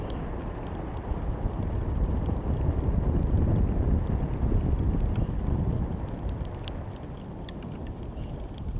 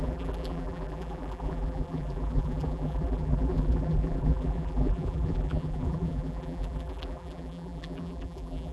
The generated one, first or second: second